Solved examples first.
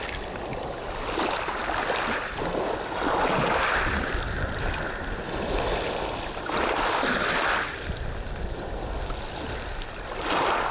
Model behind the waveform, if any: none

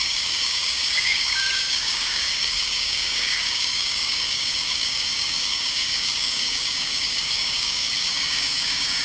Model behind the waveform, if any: codec, DAC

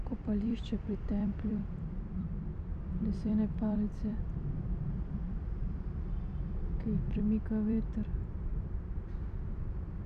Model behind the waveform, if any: vocoder, BigVGAN v2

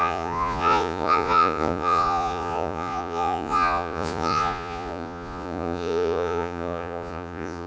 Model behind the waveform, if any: vocoder, Vocos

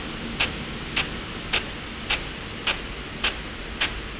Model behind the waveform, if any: none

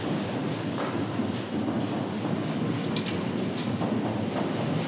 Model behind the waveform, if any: none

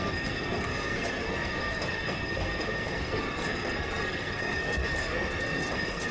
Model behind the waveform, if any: codec, SNAC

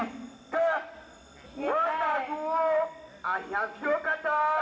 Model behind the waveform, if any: none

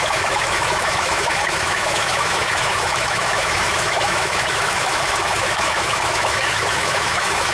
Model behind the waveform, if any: autoencoder, DAC-VAE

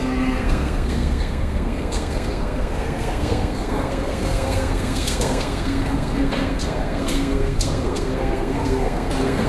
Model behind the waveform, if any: codec, SNAC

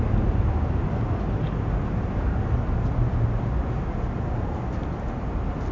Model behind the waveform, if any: none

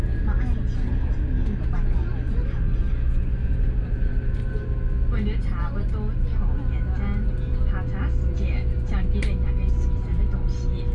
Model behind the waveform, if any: none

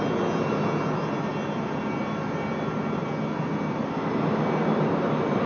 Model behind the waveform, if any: none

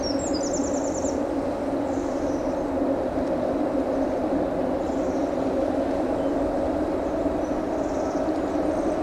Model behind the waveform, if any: none